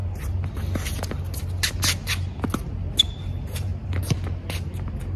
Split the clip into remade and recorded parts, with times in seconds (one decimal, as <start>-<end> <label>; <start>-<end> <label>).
0.0-3.1 recorded; 3.1-3.7 remade; 3.7-5.2 recorded